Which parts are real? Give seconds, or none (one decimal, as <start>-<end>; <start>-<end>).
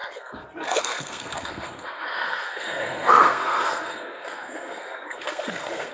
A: none